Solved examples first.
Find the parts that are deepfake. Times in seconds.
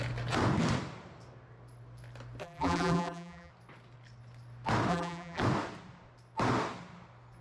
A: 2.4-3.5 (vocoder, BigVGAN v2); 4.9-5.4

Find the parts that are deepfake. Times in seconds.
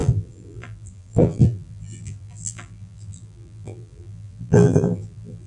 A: 0.0-5.5 (vocoder, BigVGAN v2)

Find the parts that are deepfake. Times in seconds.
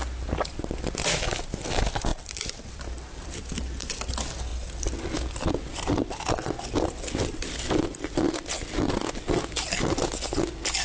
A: 2.1-4.1 (vocoder, BigVGAN v2); 4.5-8.2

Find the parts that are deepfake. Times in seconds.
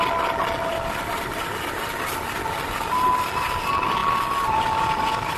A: 0.7-1.8 (vocoder, BigVGAN v2); 4.0-5.4